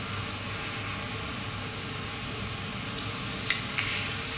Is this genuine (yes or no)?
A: yes